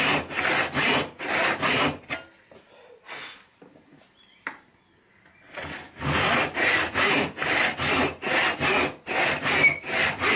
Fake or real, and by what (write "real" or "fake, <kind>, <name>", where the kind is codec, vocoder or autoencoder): real